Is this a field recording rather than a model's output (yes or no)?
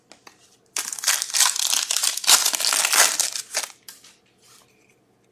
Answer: yes